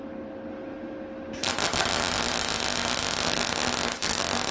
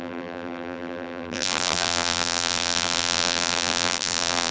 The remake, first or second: second